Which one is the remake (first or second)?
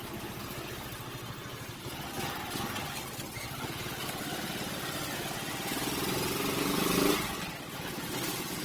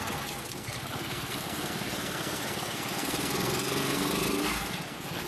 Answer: second